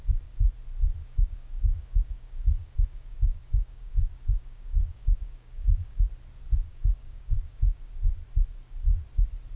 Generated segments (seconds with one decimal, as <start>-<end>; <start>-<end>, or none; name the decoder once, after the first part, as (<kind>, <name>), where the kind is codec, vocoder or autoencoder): 1.0-6.1 (codec, DAC); 6.7-7.8